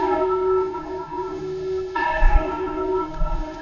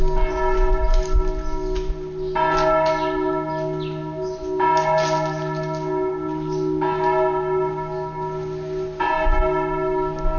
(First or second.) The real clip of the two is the second